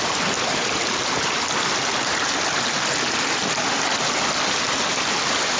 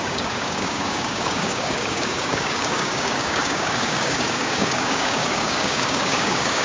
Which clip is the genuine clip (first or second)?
first